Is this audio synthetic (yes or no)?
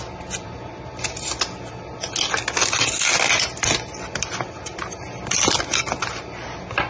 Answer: no